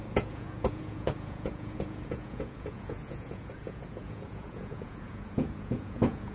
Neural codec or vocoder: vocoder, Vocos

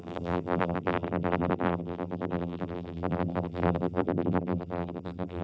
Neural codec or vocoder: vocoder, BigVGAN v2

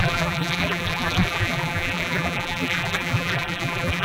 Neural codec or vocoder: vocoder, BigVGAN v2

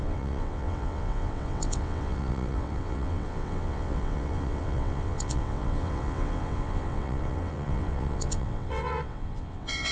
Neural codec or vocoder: vocoder, WaveNeXt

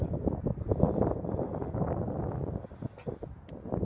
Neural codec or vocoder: none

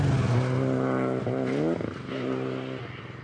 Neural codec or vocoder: none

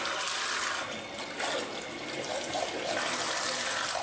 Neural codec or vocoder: none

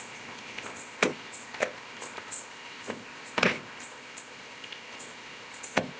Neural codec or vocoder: codec, ZipCodec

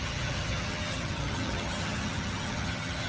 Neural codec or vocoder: vocoder, HiFi-GAN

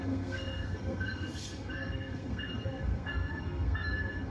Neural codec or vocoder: codec, SNAC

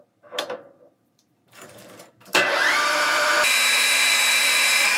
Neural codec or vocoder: vocoder, BigVGAN v2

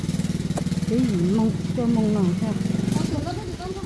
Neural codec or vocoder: none